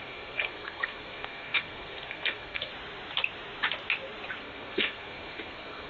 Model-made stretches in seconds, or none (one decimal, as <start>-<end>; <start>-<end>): 0.0-2.7; 4.4-5.9